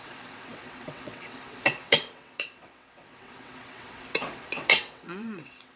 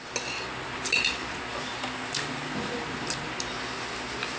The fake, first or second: first